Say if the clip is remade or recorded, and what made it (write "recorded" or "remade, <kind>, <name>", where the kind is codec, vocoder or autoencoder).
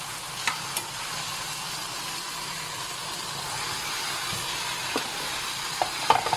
recorded